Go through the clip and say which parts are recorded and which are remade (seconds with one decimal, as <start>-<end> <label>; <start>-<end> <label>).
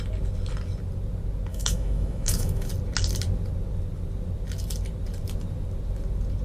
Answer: 0.0-1.5 recorded; 1.5-2.7 remade; 2.7-6.4 recorded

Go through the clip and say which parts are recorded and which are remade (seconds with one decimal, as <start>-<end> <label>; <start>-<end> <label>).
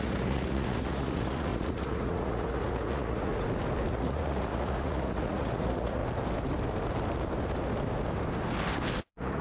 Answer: 0.0-3.3 remade; 3.3-3.9 recorded; 3.9-6.0 remade; 6.0-9.0 recorded; 9.0-9.4 remade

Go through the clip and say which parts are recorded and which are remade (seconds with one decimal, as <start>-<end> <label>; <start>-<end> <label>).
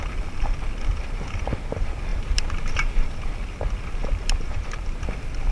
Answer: 0.0-2.1 recorded; 2.1-3.2 remade; 3.2-4.0 recorded; 4.0-5.0 remade; 5.0-5.5 recorded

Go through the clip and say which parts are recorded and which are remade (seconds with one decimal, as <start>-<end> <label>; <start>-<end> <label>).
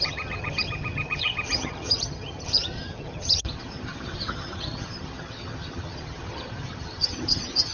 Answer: 0.0-7.7 remade